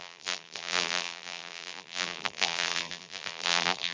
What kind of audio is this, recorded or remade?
remade